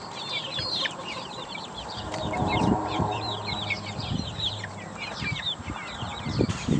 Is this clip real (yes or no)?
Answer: no